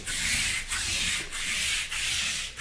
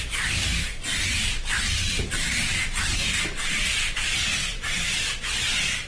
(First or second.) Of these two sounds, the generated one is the second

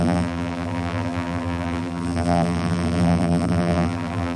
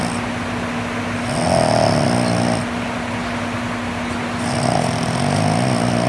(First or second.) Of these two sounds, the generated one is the first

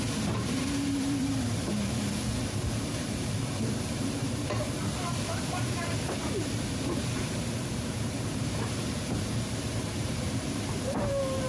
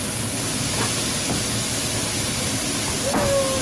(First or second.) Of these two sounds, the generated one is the first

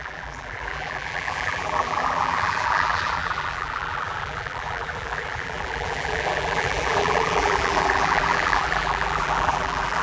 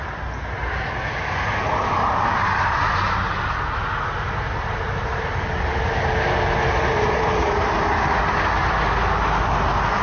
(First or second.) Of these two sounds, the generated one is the first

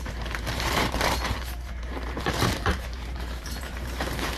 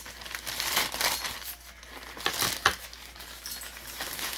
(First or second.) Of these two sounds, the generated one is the first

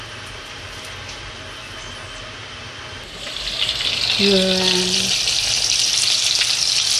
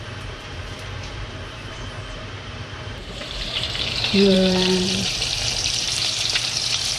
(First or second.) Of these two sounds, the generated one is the second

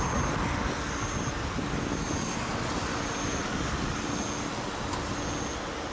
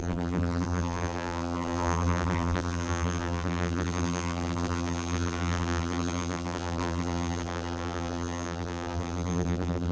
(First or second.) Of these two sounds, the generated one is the second